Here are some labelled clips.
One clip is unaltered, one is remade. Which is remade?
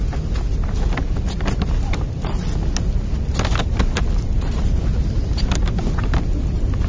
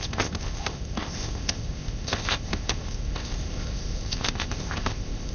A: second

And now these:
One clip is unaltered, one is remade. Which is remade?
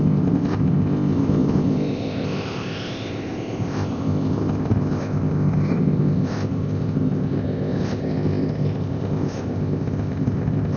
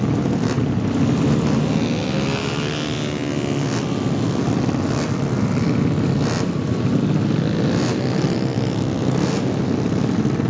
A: first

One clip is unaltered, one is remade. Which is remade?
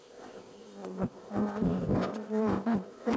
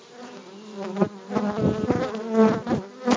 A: first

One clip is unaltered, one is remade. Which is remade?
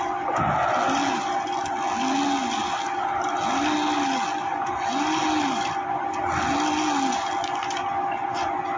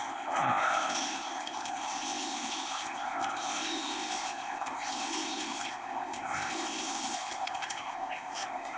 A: second